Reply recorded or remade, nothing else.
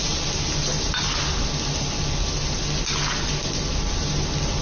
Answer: recorded